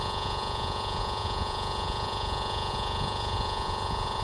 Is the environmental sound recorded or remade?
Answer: remade